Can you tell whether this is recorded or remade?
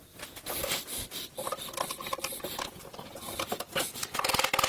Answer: recorded